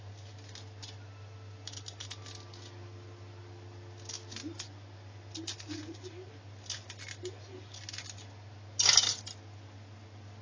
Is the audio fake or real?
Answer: real